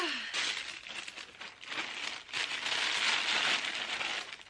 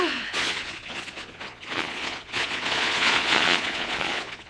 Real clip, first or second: first